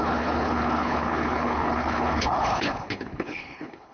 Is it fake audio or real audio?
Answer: fake